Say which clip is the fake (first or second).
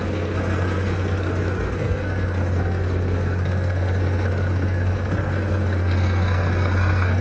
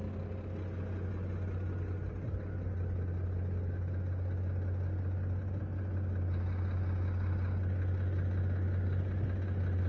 first